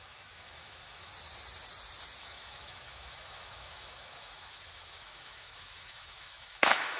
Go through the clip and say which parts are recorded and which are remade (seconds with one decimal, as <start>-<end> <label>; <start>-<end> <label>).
0.0-1.1 remade; 1.1-2.2 recorded; 2.2-7.0 remade